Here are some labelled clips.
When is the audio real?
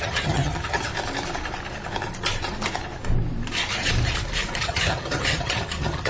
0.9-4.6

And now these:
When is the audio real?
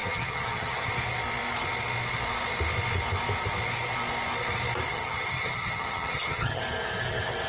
0.9-4.9; 6.6-7.5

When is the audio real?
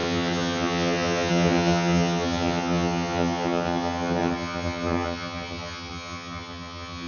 none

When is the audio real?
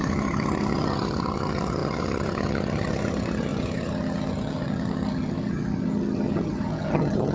none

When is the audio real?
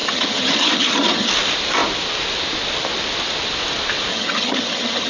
1.3-4.1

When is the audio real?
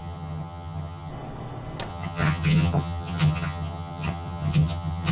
1.1-1.9